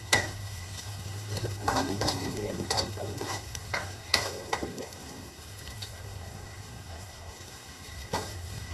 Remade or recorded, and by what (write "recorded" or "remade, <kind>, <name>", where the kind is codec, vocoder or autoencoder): remade, codec, SNAC